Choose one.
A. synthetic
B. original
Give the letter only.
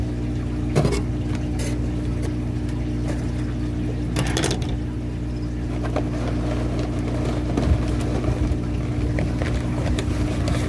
B